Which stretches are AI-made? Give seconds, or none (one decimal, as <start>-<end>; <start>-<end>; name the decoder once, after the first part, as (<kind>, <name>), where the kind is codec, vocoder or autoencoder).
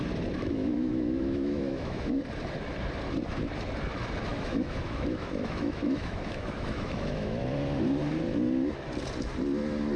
0.4-2.2 (autoencoder, DAC-VAE); 4.3-7.4